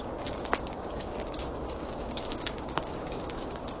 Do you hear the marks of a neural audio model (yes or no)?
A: yes